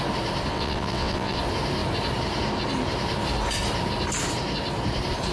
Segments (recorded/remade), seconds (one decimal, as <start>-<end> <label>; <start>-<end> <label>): 0.0-0.5 recorded; 0.5-1.4 remade; 1.4-5.3 recorded